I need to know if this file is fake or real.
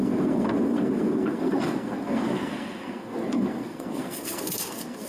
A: fake